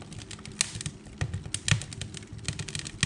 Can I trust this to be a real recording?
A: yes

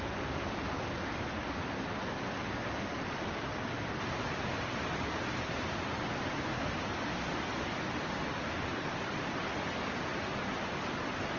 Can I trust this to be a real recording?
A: yes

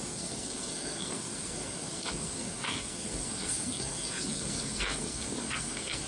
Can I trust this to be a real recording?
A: no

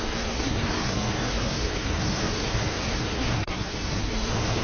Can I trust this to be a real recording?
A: no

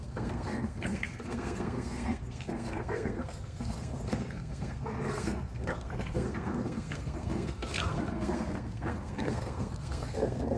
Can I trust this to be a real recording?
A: no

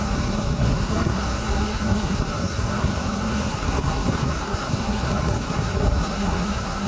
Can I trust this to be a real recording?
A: no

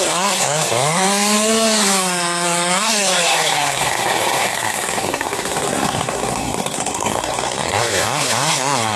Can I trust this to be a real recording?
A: no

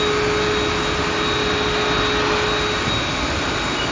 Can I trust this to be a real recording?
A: yes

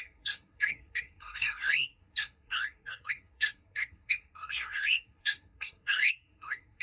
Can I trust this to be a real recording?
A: no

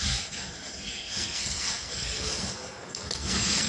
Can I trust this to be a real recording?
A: no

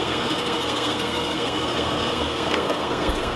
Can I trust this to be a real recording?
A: no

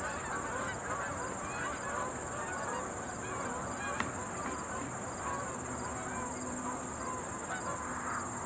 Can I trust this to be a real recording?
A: yes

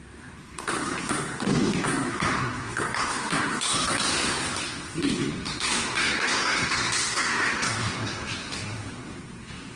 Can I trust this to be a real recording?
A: no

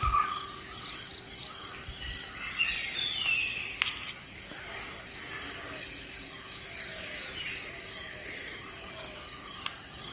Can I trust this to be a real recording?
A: yes